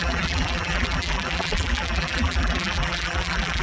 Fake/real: fake